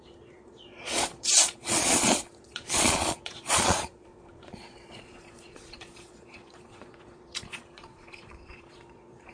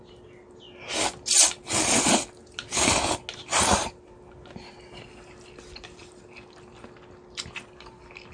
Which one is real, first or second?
second